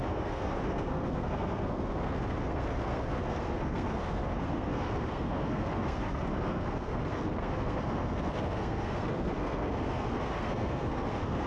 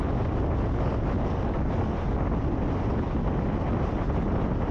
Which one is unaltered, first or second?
second